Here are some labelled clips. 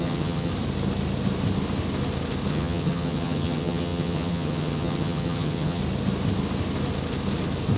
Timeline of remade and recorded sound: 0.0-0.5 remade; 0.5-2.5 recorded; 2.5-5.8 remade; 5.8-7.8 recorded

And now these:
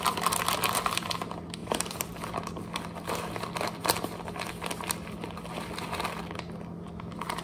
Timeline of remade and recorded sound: 0.0-1.6 recorded; 1.6-2.2 remade; 2.2-7.4 recorded

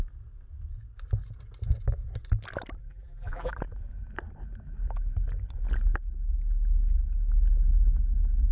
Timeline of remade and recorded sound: 0.0-2.8 recorded; 2.8-3.5 remade; 3.5-8.5 recorded

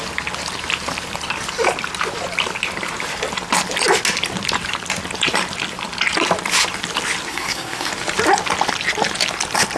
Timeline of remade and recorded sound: 0.0-7.3 recorded; 7.3-7.9 remade; 7.9-9.8 recorded